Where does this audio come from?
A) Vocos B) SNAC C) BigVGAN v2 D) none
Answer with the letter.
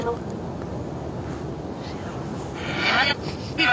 D